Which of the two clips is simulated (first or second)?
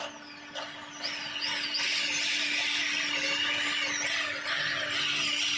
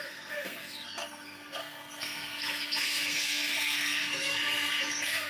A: second